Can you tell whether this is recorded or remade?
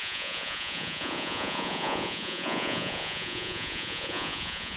remade